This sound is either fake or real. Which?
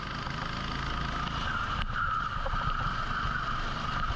real